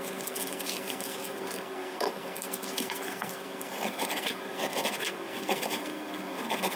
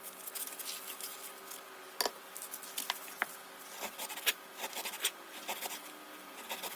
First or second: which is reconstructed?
first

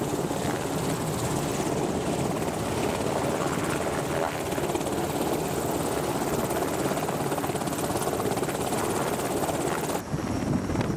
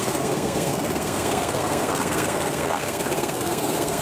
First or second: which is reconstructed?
second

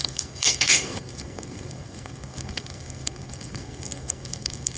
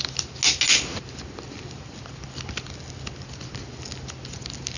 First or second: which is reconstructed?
first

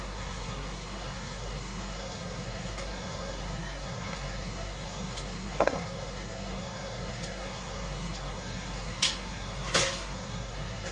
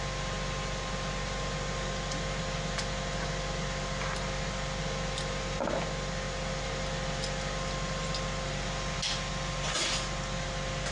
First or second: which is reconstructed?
first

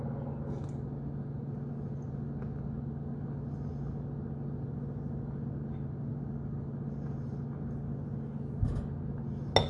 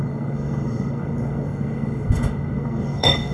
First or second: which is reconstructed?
second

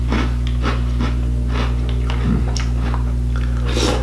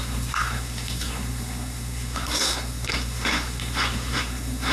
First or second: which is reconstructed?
second